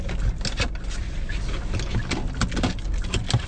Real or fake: real